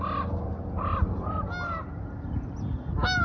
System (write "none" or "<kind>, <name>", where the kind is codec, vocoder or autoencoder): none